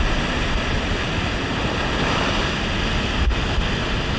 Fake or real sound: real